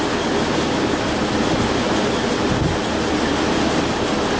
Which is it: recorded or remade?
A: recorded